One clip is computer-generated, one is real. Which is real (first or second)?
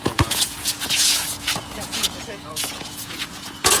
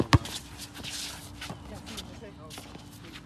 second